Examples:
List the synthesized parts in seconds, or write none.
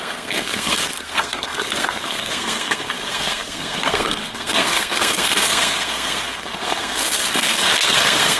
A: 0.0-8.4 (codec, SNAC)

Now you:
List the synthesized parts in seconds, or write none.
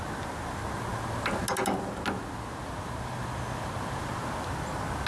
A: none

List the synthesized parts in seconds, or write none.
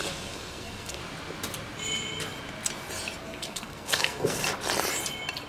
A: 0.0-1.0 (codec, SNAC); 3.2-4.4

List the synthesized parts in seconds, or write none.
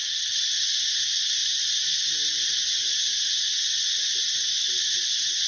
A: none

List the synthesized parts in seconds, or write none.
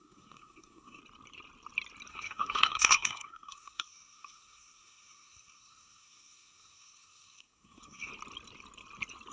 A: 0.0-1.0 (codec, SNAC); 2.1-8.1